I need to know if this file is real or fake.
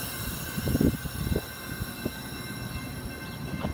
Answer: real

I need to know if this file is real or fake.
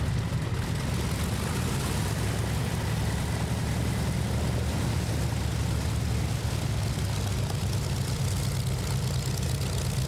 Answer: real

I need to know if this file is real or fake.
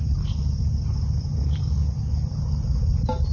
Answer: real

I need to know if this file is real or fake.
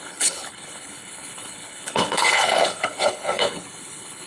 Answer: fake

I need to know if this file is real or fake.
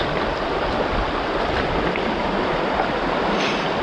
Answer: real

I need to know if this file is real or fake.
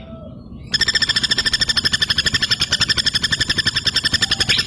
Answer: real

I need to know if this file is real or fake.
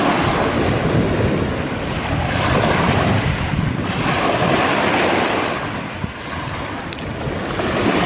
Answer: real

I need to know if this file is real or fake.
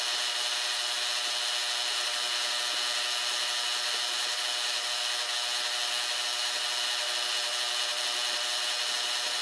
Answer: real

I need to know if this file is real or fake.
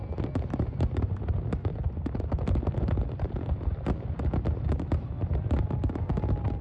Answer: real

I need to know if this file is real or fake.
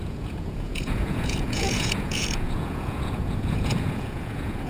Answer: fake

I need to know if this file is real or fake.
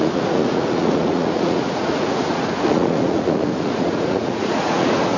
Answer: fake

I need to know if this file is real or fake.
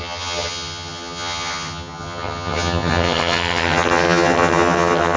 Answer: fake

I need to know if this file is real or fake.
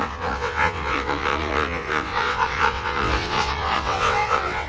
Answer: fake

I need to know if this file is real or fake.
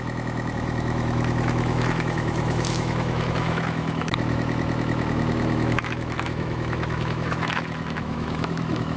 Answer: fake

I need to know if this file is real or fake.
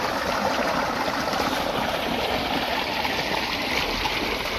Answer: real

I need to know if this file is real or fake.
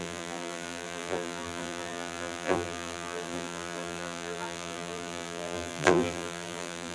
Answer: fake